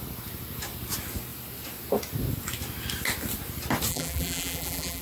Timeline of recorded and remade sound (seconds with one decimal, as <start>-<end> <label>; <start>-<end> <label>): 0.0-3.9 recorded; 3.9-5.0 remade